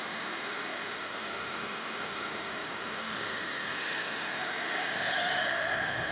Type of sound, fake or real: fake